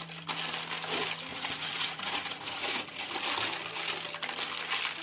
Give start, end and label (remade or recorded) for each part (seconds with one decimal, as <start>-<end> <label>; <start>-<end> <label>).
0.0-1.3 recorded; 1.3-3.0 remade; 3.0-5.0 recorded